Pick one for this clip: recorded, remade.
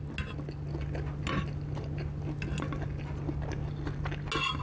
recorded